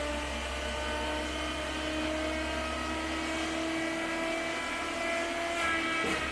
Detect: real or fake real